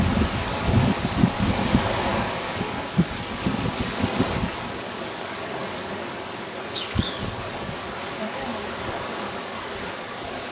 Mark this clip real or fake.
fake